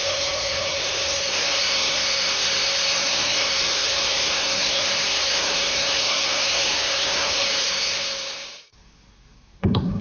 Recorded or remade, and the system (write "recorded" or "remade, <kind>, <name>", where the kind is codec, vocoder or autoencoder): remade, codec, SNAC